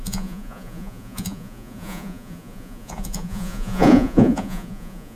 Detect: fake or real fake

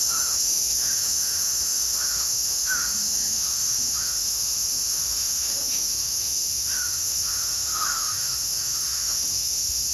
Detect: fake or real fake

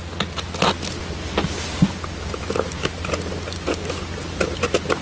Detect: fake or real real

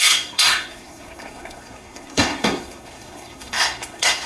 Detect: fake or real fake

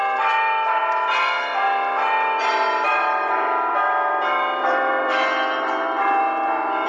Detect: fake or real fake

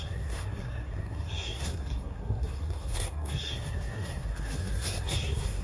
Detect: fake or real fake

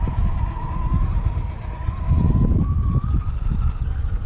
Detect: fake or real real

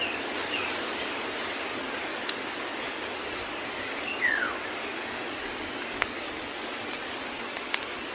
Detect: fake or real fake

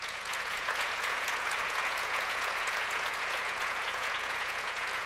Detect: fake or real fake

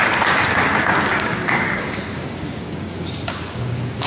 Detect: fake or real fake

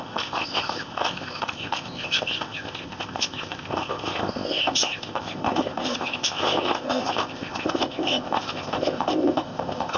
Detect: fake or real fake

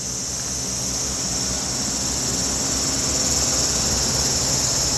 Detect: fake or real real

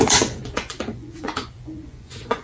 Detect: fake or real fake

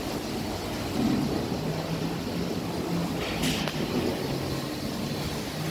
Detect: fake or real real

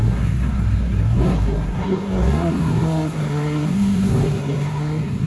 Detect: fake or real fake